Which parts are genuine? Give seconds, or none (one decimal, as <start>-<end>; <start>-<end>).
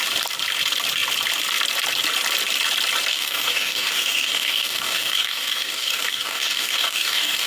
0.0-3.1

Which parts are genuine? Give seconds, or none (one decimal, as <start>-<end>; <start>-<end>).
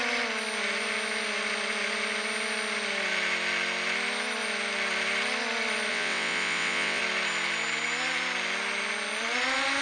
0.0-5.9; 7.0-9.8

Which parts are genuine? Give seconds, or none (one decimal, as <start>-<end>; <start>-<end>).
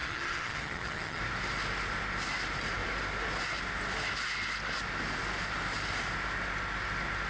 1.2-7.3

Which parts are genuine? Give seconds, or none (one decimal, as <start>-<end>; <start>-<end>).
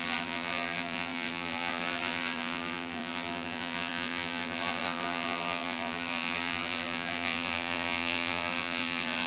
none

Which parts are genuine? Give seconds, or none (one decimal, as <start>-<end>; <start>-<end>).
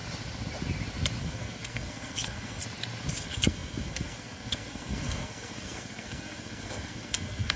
0.0-1.2; 2.6-3.1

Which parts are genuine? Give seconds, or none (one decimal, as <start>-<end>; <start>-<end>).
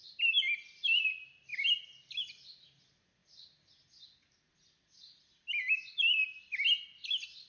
0.0-7.5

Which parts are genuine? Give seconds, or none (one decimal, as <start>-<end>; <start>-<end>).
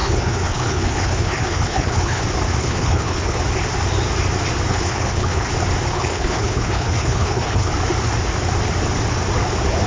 2.2-2.6; 3.4-4.7; 5.5-5.9; 7.7-9.9